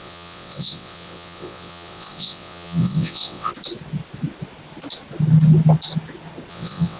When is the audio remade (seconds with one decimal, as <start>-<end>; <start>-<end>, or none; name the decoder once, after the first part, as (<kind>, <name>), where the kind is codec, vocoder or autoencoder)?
0.0-3.5 (vocoder, WaveNeXt); 6.5-7.0